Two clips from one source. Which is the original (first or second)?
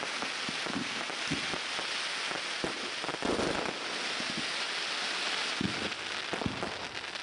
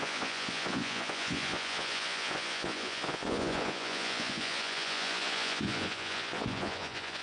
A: first